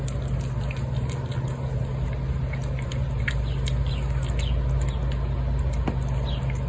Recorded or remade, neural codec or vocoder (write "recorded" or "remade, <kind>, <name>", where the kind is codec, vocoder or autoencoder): recorded